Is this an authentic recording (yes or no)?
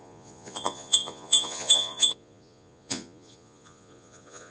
no